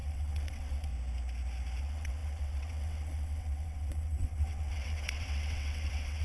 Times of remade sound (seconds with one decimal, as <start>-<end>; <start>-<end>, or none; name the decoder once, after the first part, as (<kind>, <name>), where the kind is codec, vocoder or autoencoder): 0.0-0.9 (vocoder, WaveNeXt); 1.8-6.2